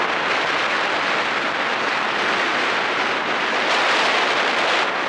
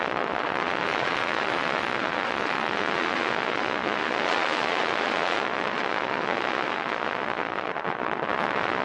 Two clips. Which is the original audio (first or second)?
first